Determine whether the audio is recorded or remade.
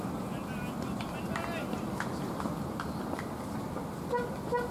recorded